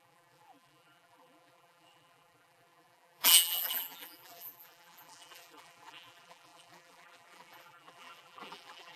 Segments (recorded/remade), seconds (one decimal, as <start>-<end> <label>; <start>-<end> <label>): 0.0-9.0 remade